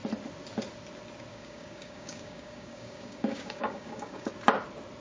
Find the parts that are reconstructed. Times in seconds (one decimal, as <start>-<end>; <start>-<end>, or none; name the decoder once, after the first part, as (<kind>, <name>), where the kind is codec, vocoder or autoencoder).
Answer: 1.3-4.3 (codec, DAC)